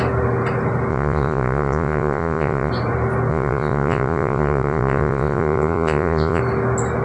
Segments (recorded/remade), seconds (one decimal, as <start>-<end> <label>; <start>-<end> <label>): 0.0-0.9 recorded; 0.9-2.7 remade; 2.7-3.3 recorded; 3.3-6.4 remade; 6.4-7.0 recorded